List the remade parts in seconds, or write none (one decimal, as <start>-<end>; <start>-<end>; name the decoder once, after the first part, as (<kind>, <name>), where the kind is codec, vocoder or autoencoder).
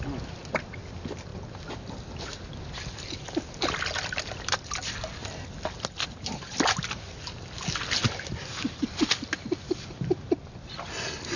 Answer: 1.3-2.2 (vocoder, BigVGAN v2); 5.2-7.4; 8.0-11.4